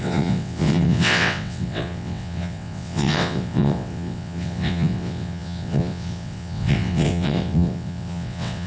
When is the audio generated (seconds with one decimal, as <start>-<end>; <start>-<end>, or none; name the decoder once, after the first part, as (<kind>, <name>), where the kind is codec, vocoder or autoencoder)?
0.0-8.7 (vocoder, WaveNeXt)